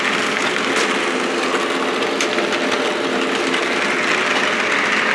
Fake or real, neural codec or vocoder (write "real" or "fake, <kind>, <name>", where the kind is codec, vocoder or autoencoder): real